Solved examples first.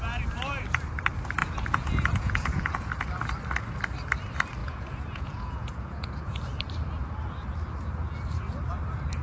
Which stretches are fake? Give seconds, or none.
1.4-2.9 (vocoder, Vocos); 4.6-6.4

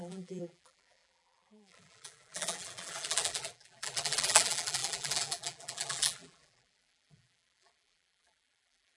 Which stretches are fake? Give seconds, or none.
0.0-9.0 (vocoder, BigVGAN v2)

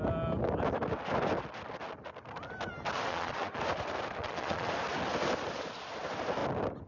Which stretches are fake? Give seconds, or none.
3.1-3.6 (vocoder, Vocos); 4.2-4.7

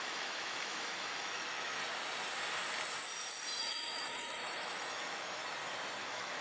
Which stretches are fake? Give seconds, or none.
0.0-1.8 (autoencoder, DAC-VAE); 3.6-5.4; 6.0-6.4

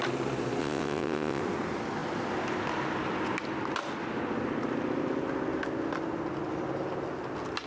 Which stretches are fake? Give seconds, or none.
0.6-1.4 (vocoder, WaveNeXt)

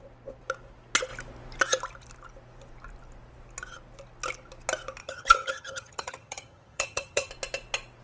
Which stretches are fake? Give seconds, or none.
5.0-7.3 (vocoder, HiFi-GAN)

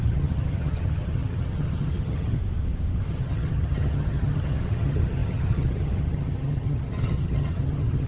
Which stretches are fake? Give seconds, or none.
0.0-2.4 (vocoder, HiFi-GAN); 3.1-8.1

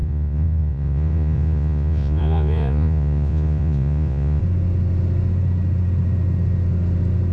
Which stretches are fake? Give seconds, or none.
0.0-4.4 (vocoder, Vocos)